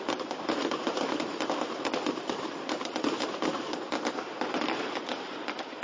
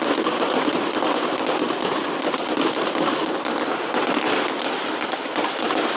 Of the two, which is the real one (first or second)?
second